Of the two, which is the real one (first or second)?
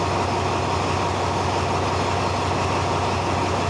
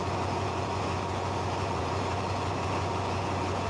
first